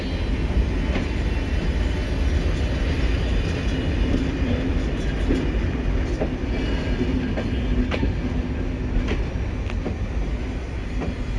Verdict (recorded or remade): recorded